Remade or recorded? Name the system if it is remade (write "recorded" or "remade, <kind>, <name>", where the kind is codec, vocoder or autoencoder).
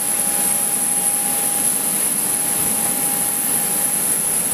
recorded